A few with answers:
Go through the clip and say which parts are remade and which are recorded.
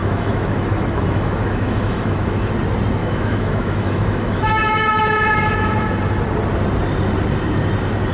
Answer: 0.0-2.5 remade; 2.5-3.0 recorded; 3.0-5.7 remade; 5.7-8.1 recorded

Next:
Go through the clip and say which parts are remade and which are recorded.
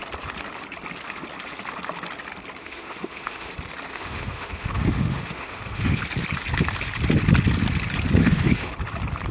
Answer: 0.0-2.6 recorded; 2.6-3.5 remade; 3.5-3.9 recorded; 3.9-6.0 remade; 6.0-8.2 recorded; 8.2-8.7 remade; 8.7-9.3 recorded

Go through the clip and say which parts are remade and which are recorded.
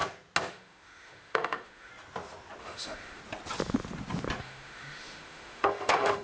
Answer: 0.0-0.5 recorded; 0.5-1.9 remade; 1.9-2.6 recorded; 2.6-3.2 remade; 3.2-4.4 recorded; 4.4-6.2 remade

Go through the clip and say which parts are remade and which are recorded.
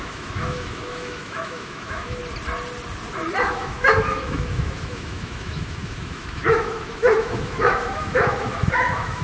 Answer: 0.0-2.2 remade; 2.2-3.4 recorded; 3.4-9.2 remade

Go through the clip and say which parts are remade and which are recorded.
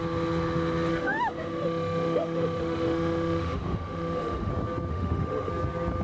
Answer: 0.0-0.9 recorded; 0.9-4.5 remade; 4.5-4.9 recorded; 4.9-5.5 remade; 5.5-6.0 recorded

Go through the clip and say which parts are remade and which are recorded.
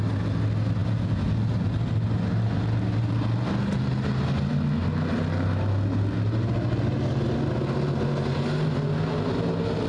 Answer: 0.0-9.9 recorded